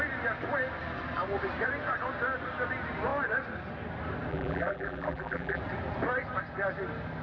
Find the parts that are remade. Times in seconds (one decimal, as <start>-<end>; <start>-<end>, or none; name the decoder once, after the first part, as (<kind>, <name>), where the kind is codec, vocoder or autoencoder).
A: 4.3-5.6 (vocoder, BigVGAN v2)